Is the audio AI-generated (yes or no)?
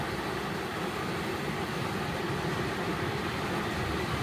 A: no